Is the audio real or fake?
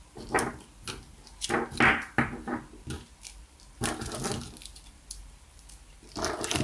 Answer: real